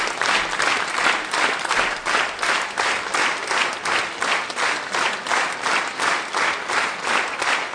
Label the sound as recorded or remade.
recorded